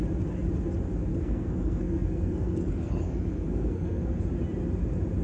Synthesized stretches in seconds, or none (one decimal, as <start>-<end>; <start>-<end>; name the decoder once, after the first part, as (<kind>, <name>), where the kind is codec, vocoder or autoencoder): 1.1-4.2 (codec, SNAC)